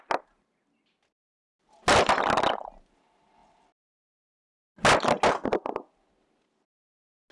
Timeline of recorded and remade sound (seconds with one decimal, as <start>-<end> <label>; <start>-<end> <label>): 0.0-7.3 recorded

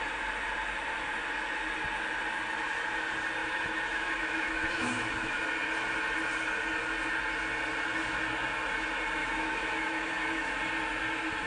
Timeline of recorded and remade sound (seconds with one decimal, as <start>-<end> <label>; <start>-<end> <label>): 0.0-3.4 recorded; 3.4-5.4 remade; 5.4-9.2 recorded; 9.2-10.5 remade; 10.5-11.5 recorded

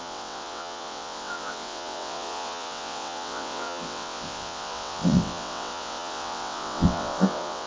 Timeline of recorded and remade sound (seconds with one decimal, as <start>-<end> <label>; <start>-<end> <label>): 0.0-7.7 remade